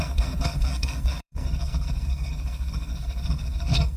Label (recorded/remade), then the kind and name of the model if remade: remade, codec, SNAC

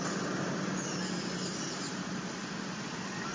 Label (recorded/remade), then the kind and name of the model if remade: recorded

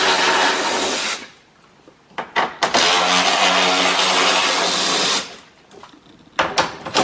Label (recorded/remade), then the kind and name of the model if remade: recorded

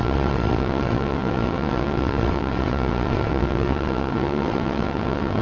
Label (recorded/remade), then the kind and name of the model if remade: remade, vocoder, WaveNeXt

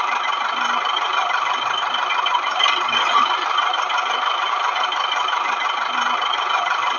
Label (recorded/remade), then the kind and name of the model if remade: remade, vocoder, BigVGAN v2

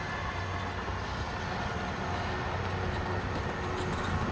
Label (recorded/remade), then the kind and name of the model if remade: recorded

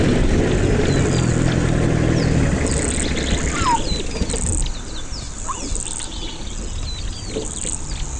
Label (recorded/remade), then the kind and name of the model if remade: recorded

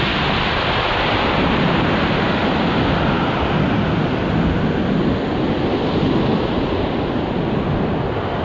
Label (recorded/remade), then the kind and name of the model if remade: recorded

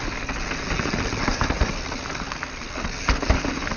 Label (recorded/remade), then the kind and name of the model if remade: recorded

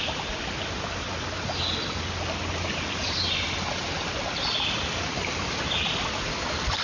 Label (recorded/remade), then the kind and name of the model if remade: recorded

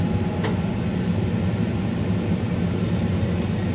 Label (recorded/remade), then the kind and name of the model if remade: recorded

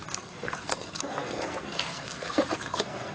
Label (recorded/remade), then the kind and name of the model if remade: remade, codec, SNAC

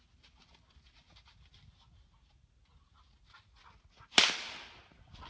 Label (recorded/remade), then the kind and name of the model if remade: recorded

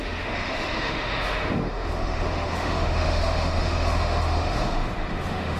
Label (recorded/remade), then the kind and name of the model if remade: remade, autoencoder, DAC-VAE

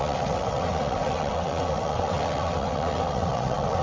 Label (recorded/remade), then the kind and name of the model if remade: remade, vocoder, WaveNeXt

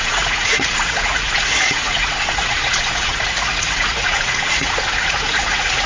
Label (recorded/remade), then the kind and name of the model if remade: remade, vocoder, Vocos